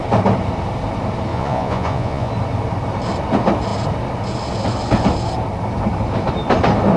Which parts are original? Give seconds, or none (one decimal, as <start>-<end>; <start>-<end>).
0.0-1.3; 2.3-7.0